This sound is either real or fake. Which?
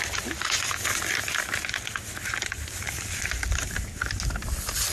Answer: real